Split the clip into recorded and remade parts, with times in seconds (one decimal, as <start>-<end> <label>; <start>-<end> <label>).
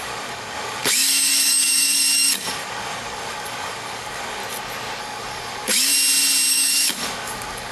0.0-4.4 remade; 4.4-5.0 recorded; 5.0-5.9 remade; 5.9-6.5 recorded; 6.5-7.7 remade